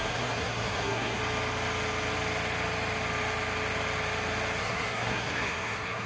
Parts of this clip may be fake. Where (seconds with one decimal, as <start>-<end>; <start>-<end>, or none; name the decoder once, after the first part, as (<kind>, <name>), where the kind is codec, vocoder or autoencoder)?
0.0-1.2 (codec, SNAC); 4.6-6.1